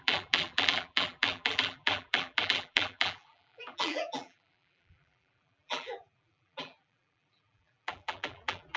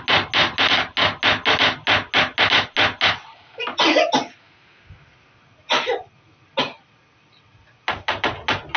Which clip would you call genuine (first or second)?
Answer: second